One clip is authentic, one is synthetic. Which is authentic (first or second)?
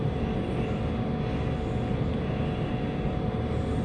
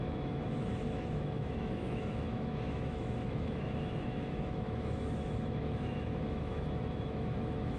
first